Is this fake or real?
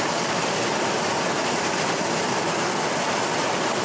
real